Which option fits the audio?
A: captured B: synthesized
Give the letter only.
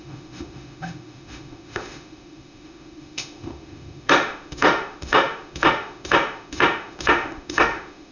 B